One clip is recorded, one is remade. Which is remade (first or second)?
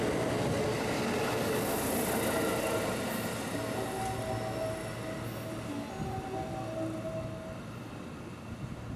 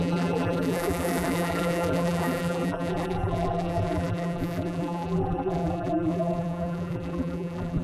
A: second